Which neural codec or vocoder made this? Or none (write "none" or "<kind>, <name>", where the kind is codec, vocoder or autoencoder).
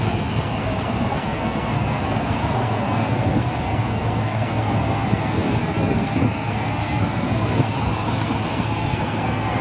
codec, SNAC